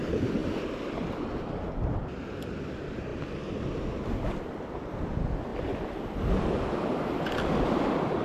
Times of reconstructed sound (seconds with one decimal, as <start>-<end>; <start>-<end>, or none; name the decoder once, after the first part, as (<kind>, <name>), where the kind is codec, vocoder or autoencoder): 0.0-0.4 (vocoder, BigVGAN v2); 1.7-3.1; 4.3-5.5; 7.6-8.2